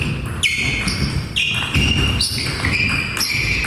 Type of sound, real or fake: real